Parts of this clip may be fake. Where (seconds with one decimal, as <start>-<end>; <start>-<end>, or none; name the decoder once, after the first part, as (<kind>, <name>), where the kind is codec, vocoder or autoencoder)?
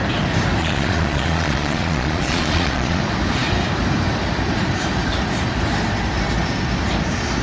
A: 0.6-3.0 (vocoder, Vocos)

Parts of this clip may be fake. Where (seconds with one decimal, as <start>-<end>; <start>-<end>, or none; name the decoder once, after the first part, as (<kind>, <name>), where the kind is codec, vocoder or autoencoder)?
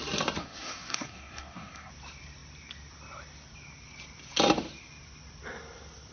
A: 0.4-1.9 (codec, SNAC)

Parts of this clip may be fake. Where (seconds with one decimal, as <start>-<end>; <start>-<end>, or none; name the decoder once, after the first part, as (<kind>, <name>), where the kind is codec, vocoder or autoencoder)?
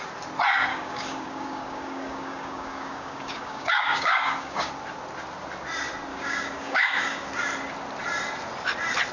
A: 0.7-4.7 (codec, DAC); 6.1-7.3